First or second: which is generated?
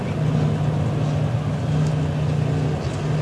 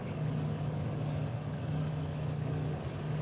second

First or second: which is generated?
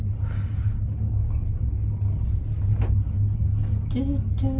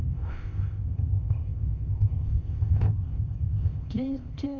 second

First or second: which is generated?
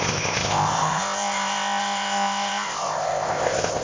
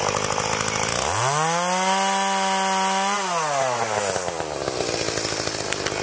first